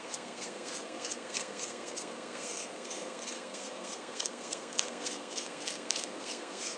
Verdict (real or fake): fake